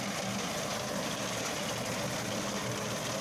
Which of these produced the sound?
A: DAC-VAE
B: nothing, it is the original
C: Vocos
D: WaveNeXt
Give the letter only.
B